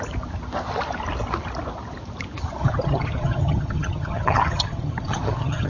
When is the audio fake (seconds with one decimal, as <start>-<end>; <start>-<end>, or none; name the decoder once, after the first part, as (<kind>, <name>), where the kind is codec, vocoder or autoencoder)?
2.6-5.7 (vocoder, HiFi-GAN)